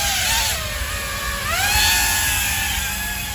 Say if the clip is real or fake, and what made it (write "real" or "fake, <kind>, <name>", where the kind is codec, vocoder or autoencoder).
real